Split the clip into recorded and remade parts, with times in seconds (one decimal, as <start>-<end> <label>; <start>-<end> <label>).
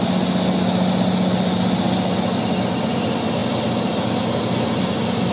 0.0-5.3 recorded